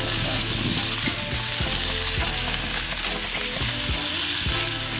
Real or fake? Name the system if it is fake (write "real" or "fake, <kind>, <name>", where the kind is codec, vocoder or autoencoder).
real